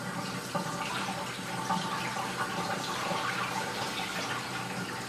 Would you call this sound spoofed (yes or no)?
yes